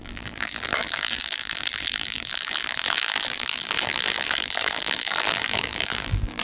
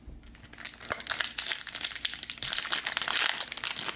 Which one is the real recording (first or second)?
second